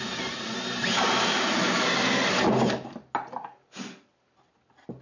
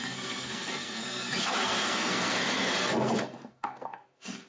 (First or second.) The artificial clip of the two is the second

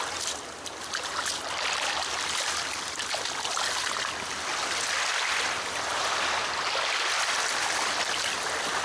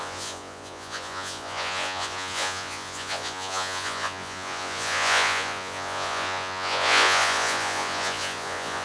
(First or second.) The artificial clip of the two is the second